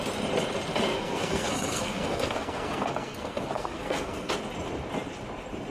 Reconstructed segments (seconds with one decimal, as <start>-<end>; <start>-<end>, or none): 0.9-4.3